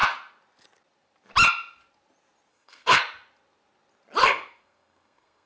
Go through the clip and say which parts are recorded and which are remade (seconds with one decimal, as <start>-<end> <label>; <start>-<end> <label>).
0.0-2.5 recorded; 2.5-3.0 remade; 3.0-4.2 recorded; 4.2-5.5 remade